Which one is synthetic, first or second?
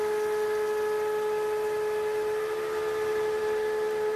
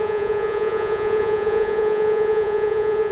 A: second